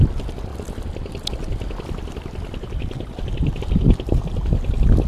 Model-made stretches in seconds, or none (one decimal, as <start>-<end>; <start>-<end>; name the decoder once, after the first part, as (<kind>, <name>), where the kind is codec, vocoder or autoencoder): none